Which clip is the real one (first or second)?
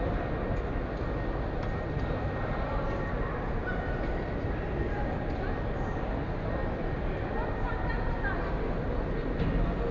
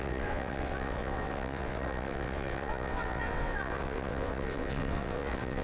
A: first